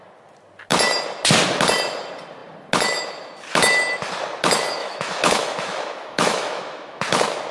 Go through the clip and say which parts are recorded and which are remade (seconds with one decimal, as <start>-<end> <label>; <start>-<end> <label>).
0.0-4.8 recorded; 4.8-7.0 remade; 7.0-7.5 recorded